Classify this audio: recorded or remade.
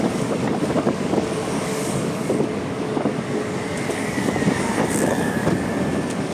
remade